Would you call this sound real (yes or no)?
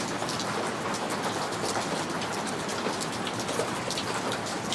no